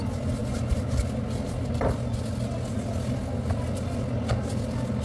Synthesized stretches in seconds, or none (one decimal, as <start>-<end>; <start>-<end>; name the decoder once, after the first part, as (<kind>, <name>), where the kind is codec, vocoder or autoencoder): none